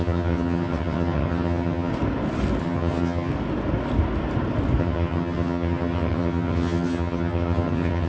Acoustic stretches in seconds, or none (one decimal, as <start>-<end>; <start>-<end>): 1.9-2.6; 3.3-4.8

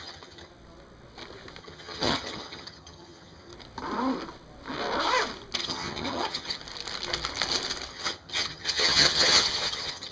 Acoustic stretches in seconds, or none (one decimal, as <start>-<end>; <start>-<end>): 0.5-1.6; 3.5-5.6; 6.6-7.9

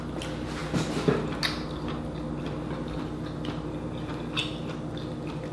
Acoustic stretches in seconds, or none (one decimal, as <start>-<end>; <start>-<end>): 0.0-5.5

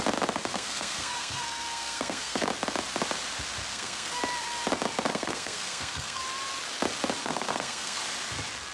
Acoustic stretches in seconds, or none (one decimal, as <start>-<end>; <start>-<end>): 0.0-0.5; 2.5-3.7; 4.2-5.1; 6.2-7.2; 8.0-8.7

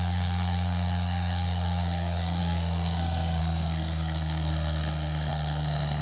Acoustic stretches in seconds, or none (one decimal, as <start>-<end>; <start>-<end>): none